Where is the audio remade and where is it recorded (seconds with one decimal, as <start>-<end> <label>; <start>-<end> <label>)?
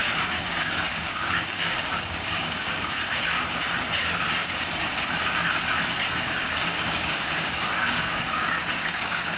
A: 0.0-3.0 remade; 3.0-6.1 recorded; 6.1-9.4 remade